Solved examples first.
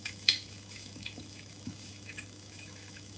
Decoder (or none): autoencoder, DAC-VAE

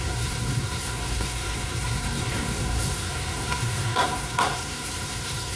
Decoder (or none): codec, SNAC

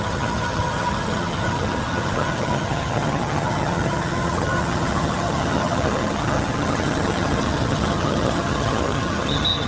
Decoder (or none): vocoder, HiFi-GAN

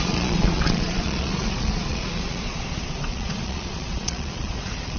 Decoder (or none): vocoder, Vocos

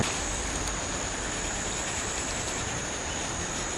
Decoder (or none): vocoder, BigVGAN v2